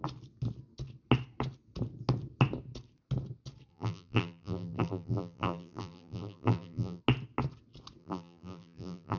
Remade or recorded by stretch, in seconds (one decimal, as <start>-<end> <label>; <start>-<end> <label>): 0.0-3.7 recorded; 3.7-7.0 remade; 7.0-8.0 recorded; 8.0-9.2 remade